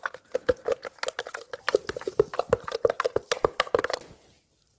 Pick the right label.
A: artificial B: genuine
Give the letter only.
B